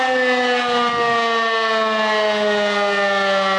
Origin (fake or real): real